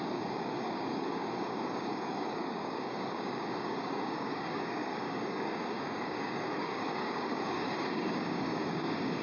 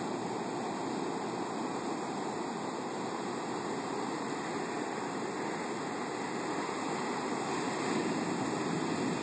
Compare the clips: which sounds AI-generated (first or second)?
first